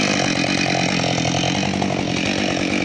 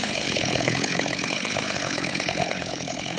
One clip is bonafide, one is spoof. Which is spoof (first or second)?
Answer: second